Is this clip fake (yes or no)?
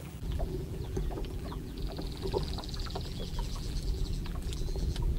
yes